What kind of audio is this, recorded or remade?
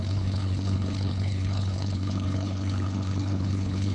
remade